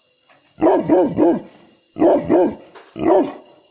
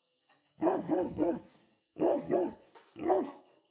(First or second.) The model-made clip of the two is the second